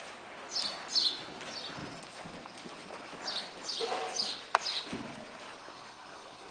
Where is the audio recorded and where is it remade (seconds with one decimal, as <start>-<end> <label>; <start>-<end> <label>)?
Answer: 0.0-5.6 recorded; 5.6-6.5 remade